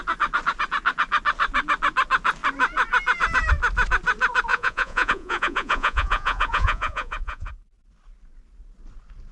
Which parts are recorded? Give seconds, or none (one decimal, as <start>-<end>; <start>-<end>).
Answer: 0.0-4.5; 7.5-9.3